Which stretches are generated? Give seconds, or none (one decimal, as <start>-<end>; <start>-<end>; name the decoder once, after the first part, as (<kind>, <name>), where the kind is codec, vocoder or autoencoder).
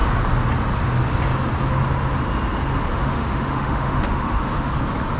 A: 2.9-4.7 (autoencoder, DAC-VAE)